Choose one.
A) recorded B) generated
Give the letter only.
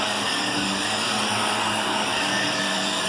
B